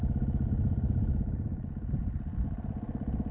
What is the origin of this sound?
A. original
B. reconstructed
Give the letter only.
A